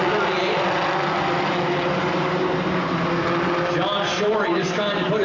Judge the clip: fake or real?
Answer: real